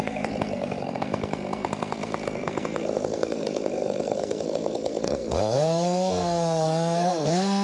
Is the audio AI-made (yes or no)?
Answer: yes